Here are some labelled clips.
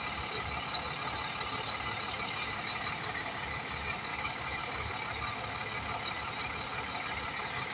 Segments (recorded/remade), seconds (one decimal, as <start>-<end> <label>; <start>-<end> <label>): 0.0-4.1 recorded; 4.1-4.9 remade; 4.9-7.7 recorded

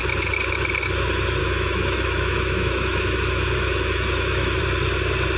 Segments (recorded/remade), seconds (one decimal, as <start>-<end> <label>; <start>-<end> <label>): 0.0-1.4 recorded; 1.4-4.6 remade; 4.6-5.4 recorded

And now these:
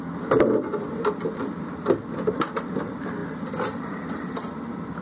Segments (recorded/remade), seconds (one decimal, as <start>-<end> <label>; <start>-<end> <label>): 0.0-3.2 recorded; 3.2-4.4 remade; 4.4-5.0 recorded

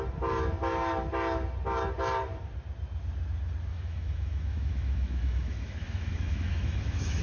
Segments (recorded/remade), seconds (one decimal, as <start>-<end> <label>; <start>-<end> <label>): 0.0-3.7 recorded; 3.7-7.2 remade